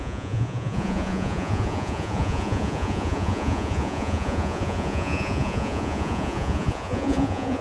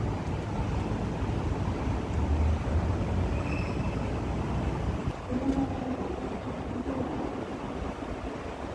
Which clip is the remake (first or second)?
first